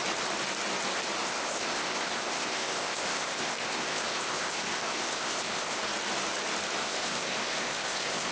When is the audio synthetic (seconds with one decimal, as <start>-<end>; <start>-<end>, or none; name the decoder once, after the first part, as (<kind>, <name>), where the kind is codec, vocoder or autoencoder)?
1.2-5.8 (codec, ZipCodec); 6.8-8.3